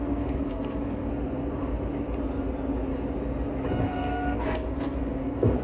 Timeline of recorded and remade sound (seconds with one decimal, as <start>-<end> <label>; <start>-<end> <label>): 0.0-1.1 remade; 1.1-3.8 recorded; 3.8-5.6 remade